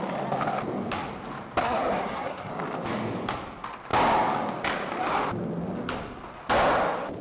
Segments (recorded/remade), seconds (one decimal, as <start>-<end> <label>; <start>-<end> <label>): 0.0-1.6 recorded; 1.6-2.5 remade; 2.5-7.2 recorded